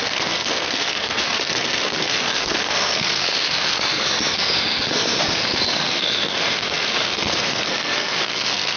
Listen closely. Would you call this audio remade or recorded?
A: remade